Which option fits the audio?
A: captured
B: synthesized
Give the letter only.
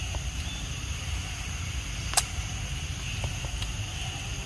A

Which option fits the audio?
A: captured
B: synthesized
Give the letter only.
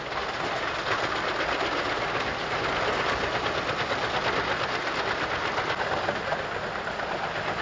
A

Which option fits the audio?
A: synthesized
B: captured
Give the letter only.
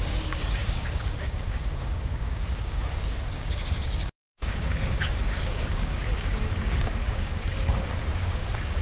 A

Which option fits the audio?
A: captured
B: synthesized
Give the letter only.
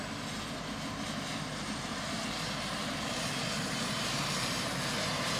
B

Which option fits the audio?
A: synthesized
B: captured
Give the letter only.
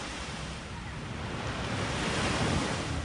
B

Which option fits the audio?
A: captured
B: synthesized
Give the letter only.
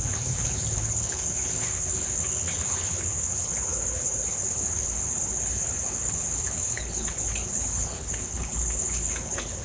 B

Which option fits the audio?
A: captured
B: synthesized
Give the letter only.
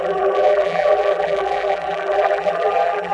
B